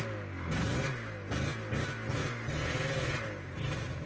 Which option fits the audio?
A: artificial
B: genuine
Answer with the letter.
B